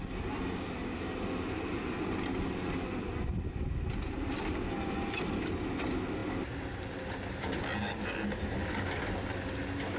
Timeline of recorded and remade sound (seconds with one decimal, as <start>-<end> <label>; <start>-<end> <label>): 0.0-10.0 recorded